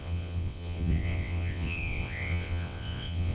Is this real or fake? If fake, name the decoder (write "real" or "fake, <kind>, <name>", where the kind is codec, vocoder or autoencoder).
fake, vocoder, WaveNeXt